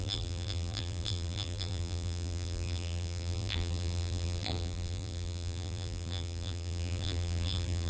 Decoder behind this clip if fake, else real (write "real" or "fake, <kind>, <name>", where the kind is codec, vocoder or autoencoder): fake, vocoder, BigVGAN v2